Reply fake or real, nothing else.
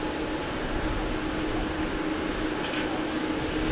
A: real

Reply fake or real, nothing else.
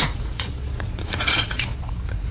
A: fake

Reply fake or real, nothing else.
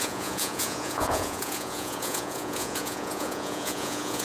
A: fake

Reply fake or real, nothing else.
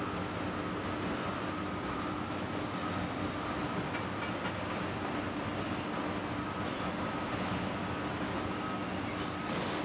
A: real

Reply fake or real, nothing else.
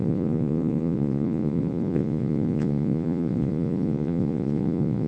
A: fake